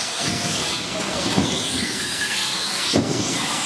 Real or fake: fake